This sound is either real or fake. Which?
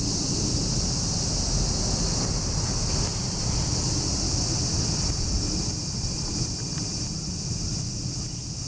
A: real